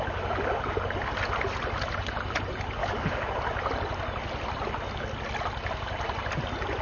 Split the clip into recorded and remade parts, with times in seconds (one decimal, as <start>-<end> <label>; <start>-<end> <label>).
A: 0.0-2.8 recorded; 2.8-3.3 remade; 3.3-6.8 recorded